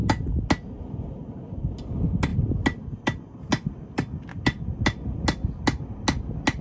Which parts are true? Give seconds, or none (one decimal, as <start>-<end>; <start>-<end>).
0.0-6.6